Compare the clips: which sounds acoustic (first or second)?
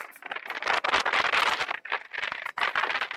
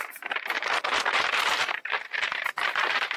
first